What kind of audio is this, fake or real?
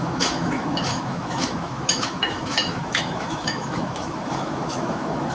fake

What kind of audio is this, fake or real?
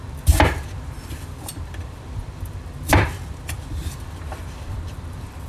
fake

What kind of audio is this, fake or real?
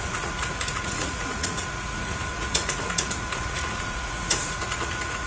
fake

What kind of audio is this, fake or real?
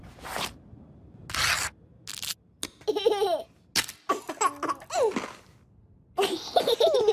real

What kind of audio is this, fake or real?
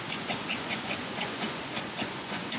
fake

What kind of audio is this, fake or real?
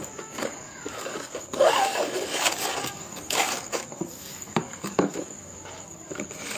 fake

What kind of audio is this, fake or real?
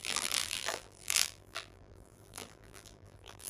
fake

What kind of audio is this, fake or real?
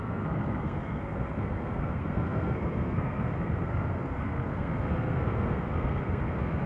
fake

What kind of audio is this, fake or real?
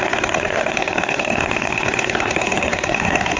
fake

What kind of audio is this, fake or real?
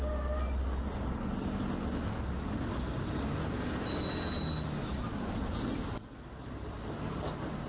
real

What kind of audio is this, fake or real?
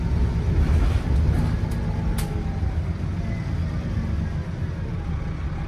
real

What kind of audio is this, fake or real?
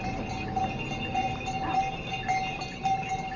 real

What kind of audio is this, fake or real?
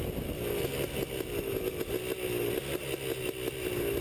real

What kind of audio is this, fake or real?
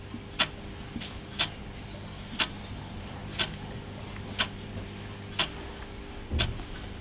real